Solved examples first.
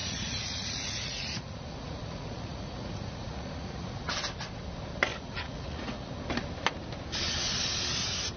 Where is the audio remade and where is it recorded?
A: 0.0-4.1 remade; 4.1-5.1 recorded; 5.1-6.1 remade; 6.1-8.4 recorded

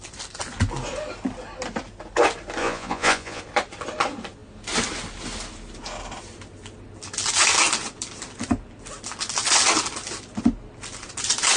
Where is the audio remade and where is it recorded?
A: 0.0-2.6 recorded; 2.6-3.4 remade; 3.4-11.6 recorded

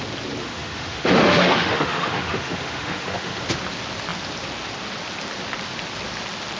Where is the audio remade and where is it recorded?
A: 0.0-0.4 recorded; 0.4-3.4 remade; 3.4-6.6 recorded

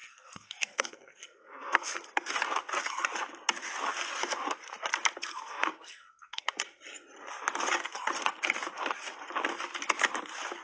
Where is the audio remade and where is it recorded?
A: 0.0-2.3 remade; 2.3-5.3 recorded; 5.3-6.5 remade; 6.5-10.6 recorded

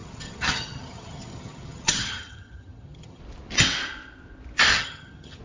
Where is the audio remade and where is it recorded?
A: 0.0-3.2 remade; 3.2-4.7 recorded; 4.7-5.4 remade